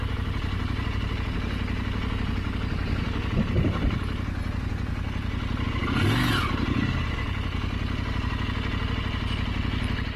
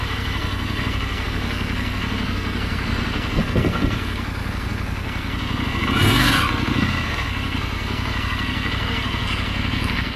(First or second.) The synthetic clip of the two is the second